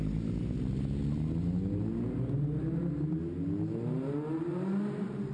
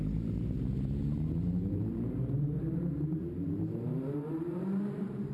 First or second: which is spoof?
second